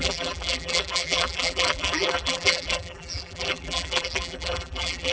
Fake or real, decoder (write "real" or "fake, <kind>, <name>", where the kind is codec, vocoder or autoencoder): fake, vocoder, BigVGAN v2